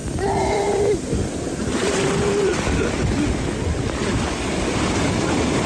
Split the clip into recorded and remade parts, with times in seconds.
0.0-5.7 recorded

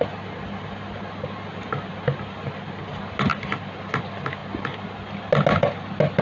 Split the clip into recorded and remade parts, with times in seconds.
0.0-6.2 recorded

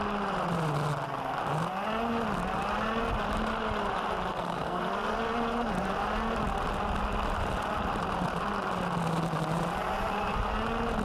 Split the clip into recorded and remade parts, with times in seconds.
0.0-4.3 recorded; 4.3-4.8 remade; 4.8-11.0 recorded

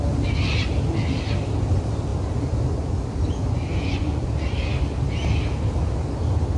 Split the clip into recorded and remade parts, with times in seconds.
0.0-3.4 recorded; 3.4-4.3 remade; 4.3-6.6 recorded

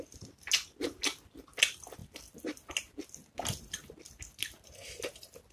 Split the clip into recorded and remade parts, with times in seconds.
0.0-5.5 recorded

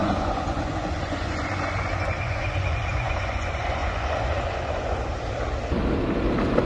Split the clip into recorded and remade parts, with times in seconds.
0.0-5.1 remade; 5.1-6.6 recorded